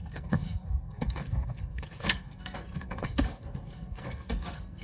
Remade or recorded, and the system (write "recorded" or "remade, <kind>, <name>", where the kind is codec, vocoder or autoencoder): remade, codec, SNAC